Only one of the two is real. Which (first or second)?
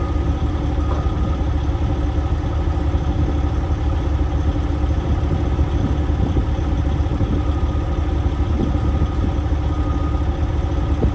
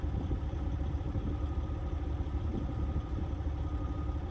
first